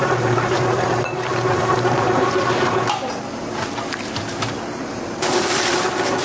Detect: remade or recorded remade